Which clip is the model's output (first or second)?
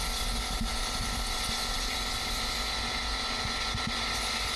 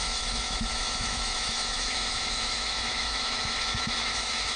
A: second